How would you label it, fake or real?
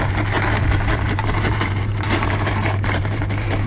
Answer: fake